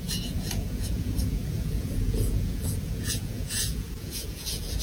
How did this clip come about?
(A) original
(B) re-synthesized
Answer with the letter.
B